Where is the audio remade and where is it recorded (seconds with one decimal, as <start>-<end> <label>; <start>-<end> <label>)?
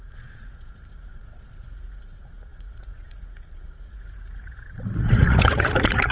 0.0-6.1 remade